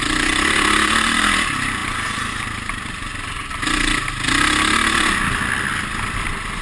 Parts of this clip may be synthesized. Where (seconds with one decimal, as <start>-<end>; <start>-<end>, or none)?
none